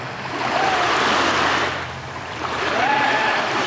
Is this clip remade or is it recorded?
remade